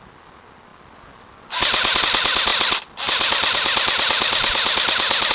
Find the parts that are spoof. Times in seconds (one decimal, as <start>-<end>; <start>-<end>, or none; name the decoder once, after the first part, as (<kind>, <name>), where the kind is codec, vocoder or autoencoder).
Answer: 2.5-5.3 (vocoder, BigVGAN v2)